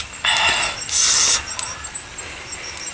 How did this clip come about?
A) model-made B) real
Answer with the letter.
B